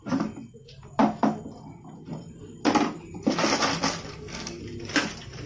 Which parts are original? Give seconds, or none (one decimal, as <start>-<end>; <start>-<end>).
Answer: 0.0-4.1; 4.6-5.5